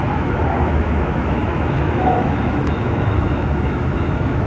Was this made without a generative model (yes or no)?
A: no